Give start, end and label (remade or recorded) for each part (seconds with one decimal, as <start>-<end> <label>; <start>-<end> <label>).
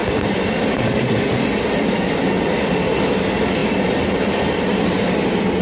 0.0-2.0 remade; 2.0-3.6 recorded; 3.6-4.1 remade; 4.1-5.6 recorded